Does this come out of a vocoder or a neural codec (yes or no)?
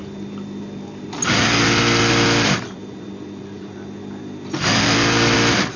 no